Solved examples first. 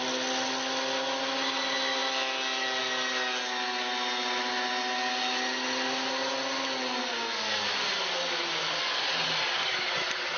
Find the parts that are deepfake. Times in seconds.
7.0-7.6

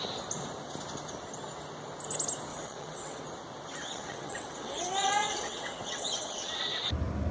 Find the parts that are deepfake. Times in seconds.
2.5-3.2; 3.8-6.6

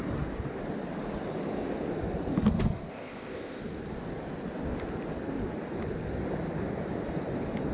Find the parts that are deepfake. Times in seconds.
2.9-3.6

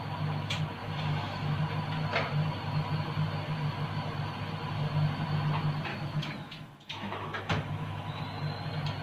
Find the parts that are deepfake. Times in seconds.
0.8-1.6; 5.9-8.2

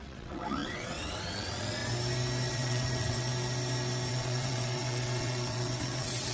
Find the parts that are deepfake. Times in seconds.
0.0-1.8; 2.5-3.3; 4.1-6.3